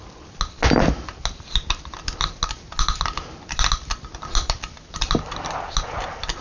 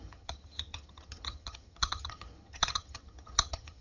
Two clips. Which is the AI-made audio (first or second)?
second